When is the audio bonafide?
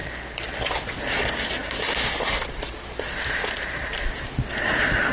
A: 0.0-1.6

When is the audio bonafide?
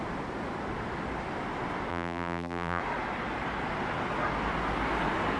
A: 0.0-1.9; 2.8-5.4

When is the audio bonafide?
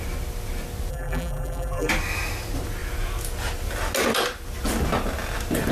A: 0.0-0.9; 1.9-5.7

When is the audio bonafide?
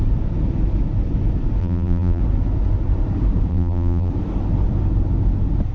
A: 0.0-1.6; 2.2-3.5; 4.1-5.7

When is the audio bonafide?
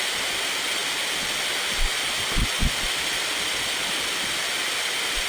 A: 0.0-5.3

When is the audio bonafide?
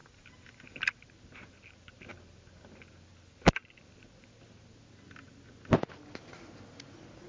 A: 0.9-7.3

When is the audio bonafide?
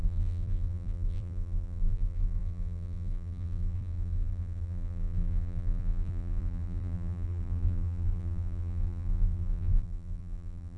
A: none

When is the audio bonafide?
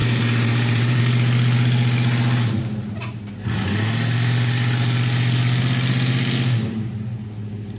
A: 1.0-7.8